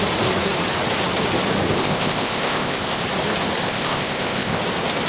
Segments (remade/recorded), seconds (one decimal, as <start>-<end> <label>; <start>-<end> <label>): 0.0-1.7 recorded; 1.7-3.0 remade; 3.0-3.6 recorded; 3.6-4.6 remade; 4.6-5.1 recorded